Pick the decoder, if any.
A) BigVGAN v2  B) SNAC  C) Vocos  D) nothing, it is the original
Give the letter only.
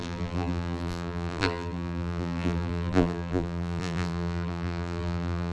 A